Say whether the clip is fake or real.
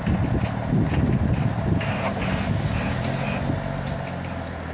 real